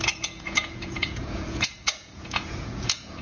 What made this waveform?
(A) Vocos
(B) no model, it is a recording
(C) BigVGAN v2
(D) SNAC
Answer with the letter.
A